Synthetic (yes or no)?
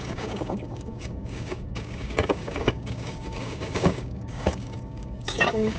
yes